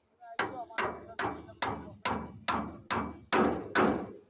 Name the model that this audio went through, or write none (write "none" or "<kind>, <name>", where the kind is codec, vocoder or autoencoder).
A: none